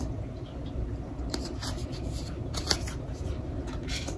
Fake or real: fake